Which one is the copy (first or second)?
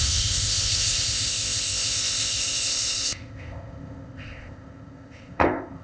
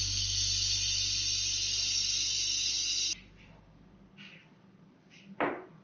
first